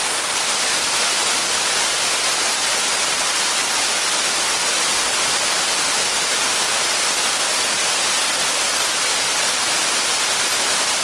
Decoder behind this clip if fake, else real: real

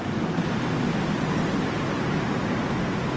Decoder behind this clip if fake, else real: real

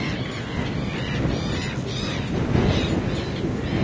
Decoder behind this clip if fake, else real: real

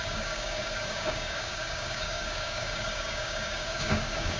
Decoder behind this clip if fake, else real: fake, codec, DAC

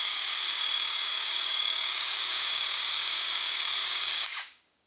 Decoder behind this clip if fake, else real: fake, codec, DAC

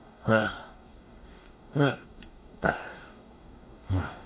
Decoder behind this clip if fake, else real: fake, codec, DAC